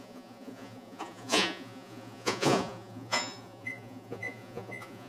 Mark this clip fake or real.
fake